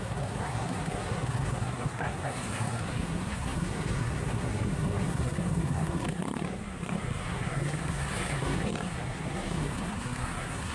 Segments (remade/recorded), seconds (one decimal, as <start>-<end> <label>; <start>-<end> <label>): 0.0-10.7 remade